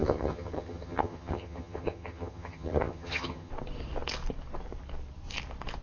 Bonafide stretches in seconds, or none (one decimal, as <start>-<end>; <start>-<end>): 3.5-5.8

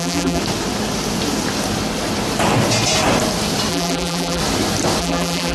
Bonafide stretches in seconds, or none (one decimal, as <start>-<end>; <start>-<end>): 0.4-3.7; 4.4-5.0

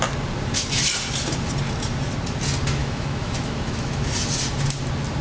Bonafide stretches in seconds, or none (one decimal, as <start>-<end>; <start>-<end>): 0.0-2.8; 4.1-5.2

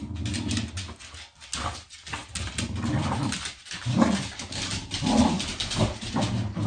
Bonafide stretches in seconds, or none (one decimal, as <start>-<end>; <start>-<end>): 0.0-6.7

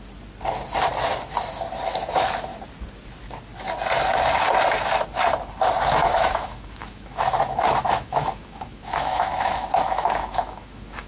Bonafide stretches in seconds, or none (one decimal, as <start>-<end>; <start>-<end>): 0.0-6.0

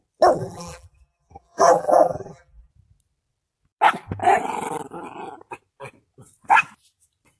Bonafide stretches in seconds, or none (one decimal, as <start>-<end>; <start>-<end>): 0.0-0.4; 2.7-7.4

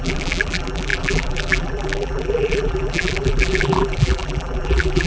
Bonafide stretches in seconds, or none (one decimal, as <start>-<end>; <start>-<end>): none

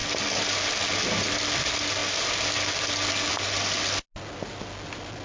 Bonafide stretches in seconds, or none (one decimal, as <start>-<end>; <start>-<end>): 0.0-5.2